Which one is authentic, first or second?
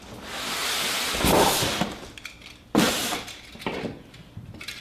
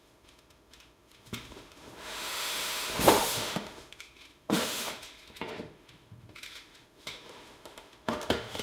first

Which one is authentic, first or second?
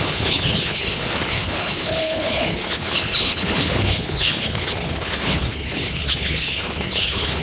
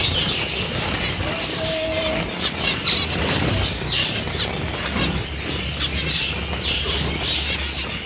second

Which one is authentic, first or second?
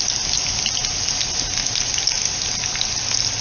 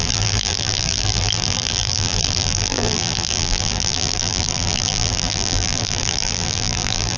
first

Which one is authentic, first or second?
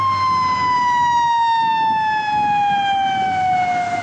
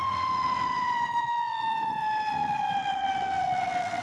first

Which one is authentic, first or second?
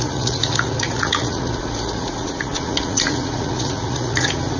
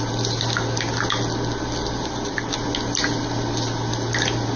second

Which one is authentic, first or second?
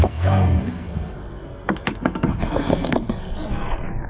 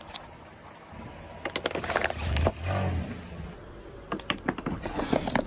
second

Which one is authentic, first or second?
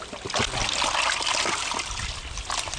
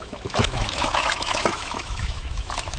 first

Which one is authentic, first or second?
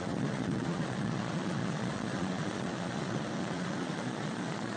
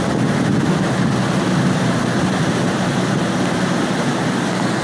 second